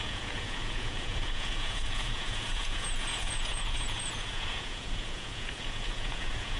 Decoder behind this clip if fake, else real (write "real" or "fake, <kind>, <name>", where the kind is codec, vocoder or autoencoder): fake, vocoder, Vocos